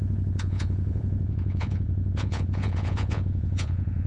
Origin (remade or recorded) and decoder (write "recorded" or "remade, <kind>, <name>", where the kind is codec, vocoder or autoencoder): remade, vocoder, Vocos